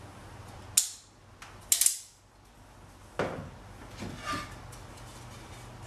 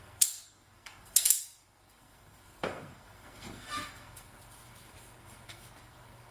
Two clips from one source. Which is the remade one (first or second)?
second